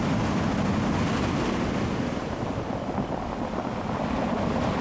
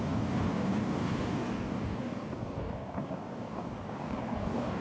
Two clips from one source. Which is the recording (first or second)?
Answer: first